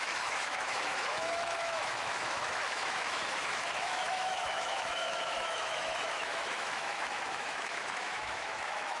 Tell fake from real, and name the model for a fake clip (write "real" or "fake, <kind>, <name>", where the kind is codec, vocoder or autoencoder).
fake, autoencoder, DAC-VAE